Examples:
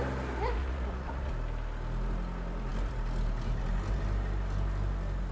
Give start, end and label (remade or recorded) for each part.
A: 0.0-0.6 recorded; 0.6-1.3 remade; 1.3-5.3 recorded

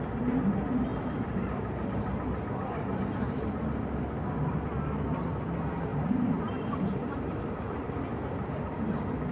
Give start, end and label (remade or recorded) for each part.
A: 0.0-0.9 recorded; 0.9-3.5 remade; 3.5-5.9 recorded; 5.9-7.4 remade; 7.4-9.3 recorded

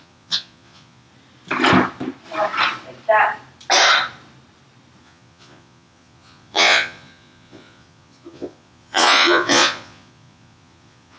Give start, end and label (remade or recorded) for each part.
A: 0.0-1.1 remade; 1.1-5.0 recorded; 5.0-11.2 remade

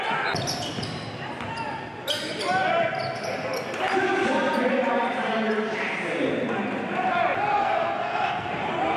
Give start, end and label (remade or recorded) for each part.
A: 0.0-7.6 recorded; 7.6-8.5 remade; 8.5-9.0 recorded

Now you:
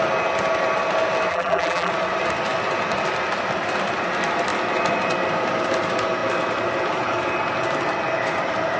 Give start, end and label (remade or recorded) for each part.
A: 0.0-1.3 recorded; 1.3-1.9 remade; 1.9-8.8 recorded